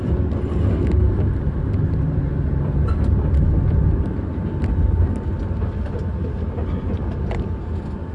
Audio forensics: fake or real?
real